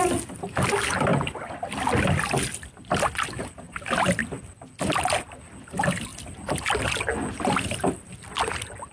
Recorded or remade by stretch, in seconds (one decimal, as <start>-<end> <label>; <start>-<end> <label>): 0.0-8.9 recorded